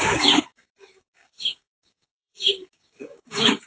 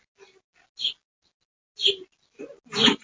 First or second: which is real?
second